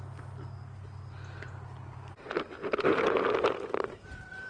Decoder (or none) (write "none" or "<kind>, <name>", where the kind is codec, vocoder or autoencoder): none